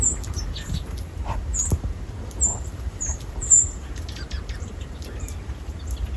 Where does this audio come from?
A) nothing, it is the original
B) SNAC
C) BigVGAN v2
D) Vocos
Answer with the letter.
C